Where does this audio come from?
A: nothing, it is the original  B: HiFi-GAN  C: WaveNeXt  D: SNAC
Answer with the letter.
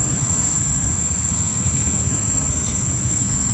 D